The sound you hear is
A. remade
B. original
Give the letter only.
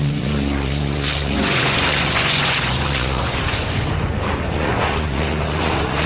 A